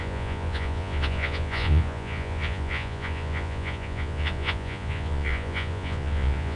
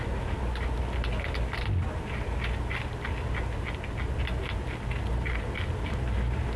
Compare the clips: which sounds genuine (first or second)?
second